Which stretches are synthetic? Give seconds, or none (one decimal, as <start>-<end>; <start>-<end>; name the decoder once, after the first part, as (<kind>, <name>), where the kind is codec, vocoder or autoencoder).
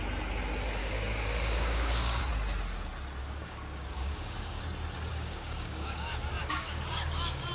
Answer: 0.8-2.2 (codec, DAC); 3.2-4.6; 5.1-7.5